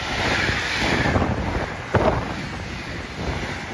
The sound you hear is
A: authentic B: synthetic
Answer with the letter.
A